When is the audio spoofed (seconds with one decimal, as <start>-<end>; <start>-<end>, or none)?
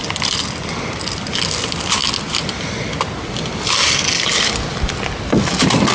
none